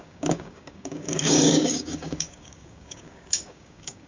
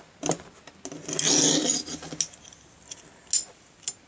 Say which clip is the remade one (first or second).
first